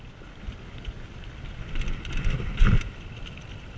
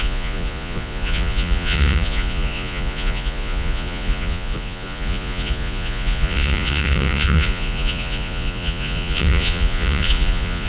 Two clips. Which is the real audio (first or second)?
first